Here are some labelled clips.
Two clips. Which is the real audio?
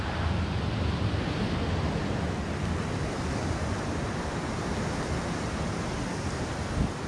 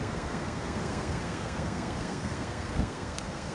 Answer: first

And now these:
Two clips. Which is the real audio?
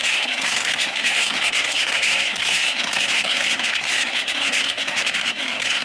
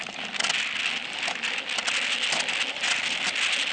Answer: second